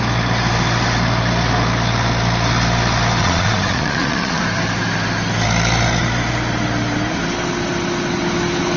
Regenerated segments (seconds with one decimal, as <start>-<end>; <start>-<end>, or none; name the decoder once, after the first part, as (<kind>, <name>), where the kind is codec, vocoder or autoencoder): 3.2-4.4 (vocoder, Vocos)